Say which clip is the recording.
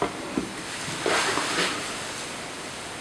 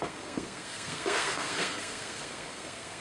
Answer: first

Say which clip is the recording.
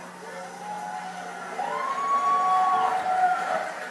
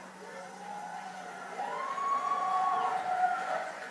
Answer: first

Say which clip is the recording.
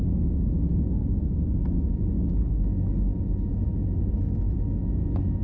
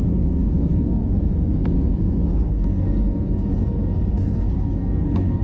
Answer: first